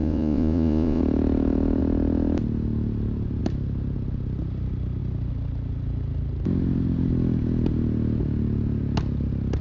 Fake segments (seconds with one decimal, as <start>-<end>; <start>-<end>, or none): 0.0-1.0

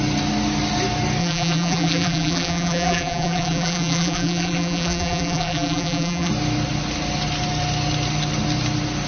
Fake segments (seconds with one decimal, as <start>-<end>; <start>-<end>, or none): 1.2-6.3

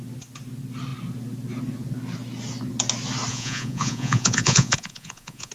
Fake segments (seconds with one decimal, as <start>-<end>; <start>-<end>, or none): 3.3-5.5

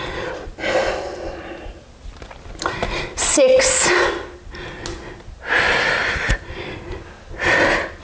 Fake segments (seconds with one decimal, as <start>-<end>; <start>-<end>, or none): none

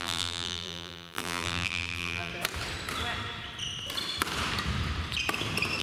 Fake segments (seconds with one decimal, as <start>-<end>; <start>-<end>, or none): 0.0-2.3